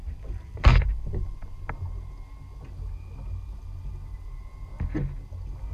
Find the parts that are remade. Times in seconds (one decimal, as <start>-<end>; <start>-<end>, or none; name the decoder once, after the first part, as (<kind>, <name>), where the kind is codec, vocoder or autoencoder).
none